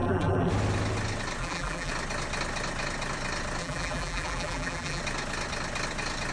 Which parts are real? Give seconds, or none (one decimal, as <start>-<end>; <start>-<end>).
0.5-1.4; 1.9-3.6; 5.0-6.3